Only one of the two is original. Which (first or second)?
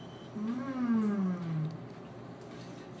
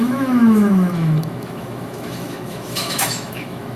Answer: first